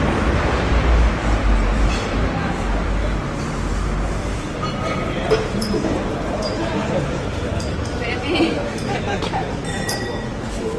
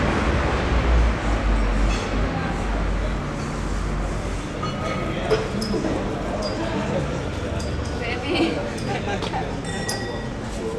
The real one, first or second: second